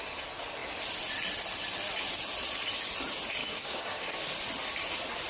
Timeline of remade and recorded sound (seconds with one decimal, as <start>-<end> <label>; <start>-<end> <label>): 0.0-3.4 recorded; 3.4-4.2 remade; 4.2-5.3 recorded